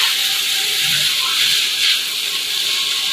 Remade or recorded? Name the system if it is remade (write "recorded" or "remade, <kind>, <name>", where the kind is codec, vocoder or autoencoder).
recorded